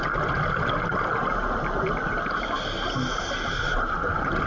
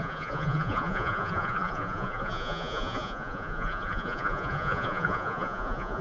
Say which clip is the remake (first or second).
second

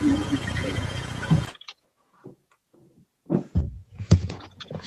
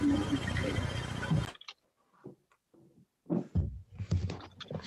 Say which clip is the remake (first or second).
first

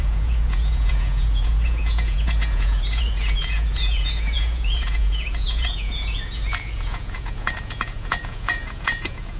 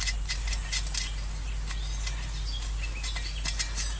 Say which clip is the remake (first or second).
first